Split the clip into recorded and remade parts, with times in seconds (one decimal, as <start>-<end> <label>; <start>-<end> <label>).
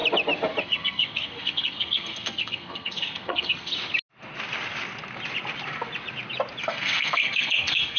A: 0.0-0.6 recorded; 0.6-3.7 remade; 3.7-6.6 recorded; 6.6-8.0 remade